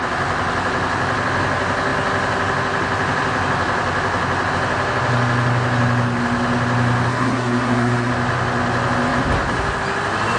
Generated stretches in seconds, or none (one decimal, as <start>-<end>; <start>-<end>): 7.1-8.1